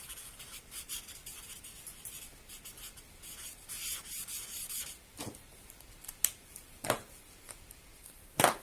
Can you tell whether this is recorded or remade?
recorded